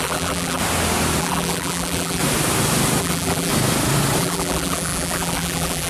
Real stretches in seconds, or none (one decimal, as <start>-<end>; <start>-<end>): 0.6-1.2; 2.2-3.0; 3.5-4.2